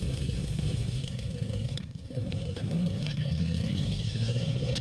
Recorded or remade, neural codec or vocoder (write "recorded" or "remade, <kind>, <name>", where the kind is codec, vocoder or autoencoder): remade, codec, SNAC